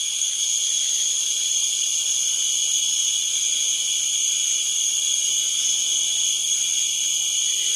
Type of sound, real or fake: real